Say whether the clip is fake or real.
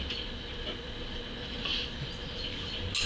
real